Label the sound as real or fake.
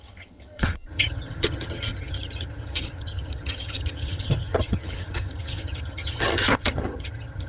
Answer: fake